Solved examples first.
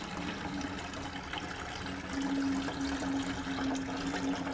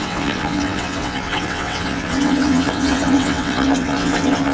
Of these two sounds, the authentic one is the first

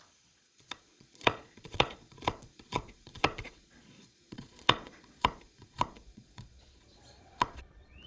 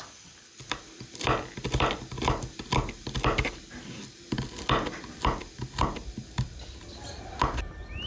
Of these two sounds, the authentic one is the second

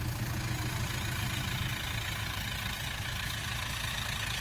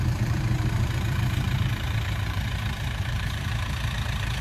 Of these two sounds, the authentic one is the first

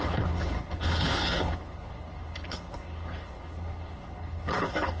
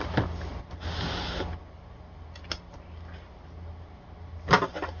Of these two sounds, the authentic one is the second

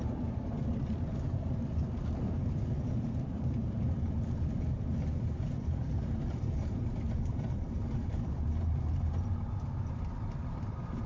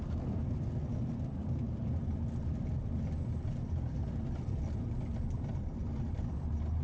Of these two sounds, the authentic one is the second